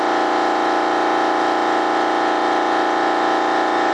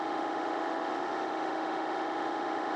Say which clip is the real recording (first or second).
first